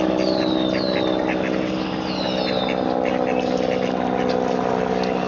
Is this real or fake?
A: real